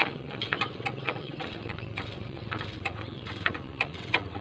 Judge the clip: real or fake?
fake